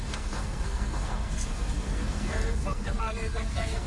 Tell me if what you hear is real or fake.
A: fake